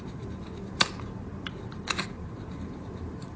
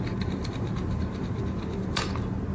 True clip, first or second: second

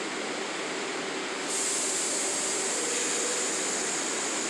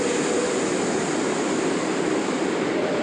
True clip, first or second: first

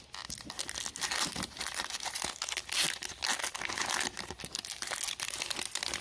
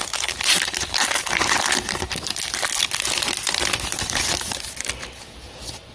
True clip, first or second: first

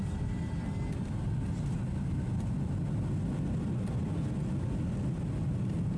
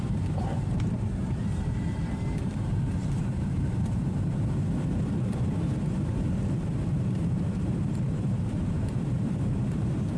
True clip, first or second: first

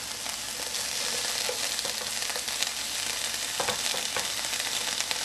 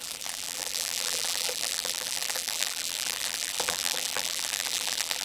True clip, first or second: first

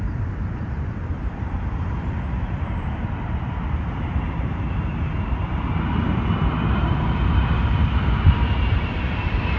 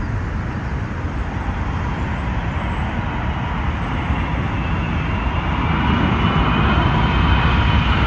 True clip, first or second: second